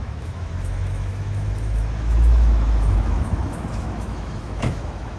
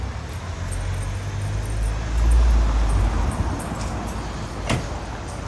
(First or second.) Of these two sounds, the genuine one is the second